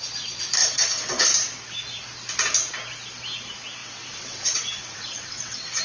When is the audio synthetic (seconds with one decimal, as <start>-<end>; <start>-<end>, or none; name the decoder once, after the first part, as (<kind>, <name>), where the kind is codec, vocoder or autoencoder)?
0.6-1.3 (vocoder, WaveNeXt); 3.8-5.8